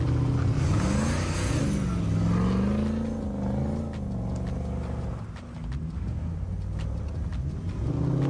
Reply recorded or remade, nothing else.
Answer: recorded